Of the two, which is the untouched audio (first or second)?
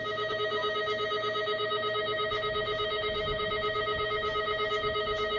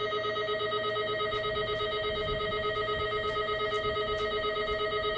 second